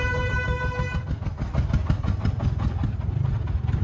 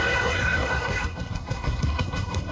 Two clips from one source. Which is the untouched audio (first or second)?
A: first